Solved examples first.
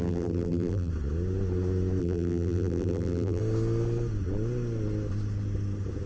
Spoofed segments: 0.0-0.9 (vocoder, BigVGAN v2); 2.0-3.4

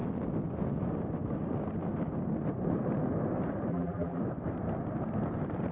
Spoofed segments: 3.7-4.2 (vocoder, BigVGAN v2)

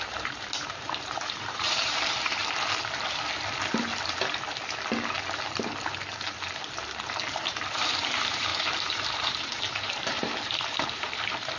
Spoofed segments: 0.0-2.4 (vocoder, BigVGAN v2); 7.3-11.6

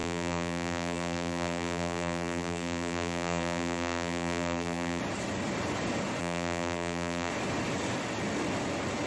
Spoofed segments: 0.0-5.0 (vocoder, BigVGAN v2); 6.2-7.3

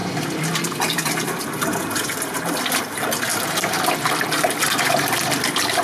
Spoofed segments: 0.0-1.4 (vocoder, BigVGAN v2); 3.3-4.8

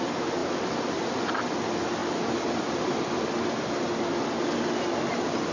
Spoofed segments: 0.4-1.2 (vocoder, BigVGAN v2); 2.0-3.6

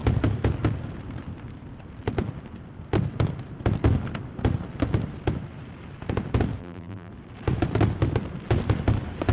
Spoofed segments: 6.6-7.1 (vocoder, BigVGAN v2)

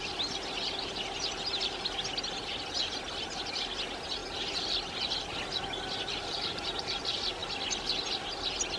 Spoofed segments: 6.1-7.0 (vocoder, BigVGAN v2)